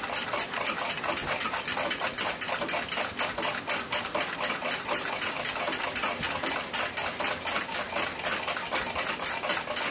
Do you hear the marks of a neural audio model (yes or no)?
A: no